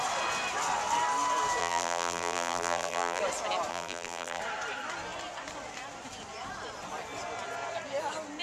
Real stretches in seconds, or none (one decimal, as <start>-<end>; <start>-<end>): 0.0-1.6; 3.2-3.7; 4.4-8.4